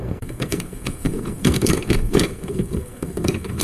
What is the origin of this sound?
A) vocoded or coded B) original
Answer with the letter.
A